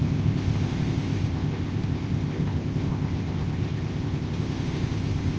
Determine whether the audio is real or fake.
fake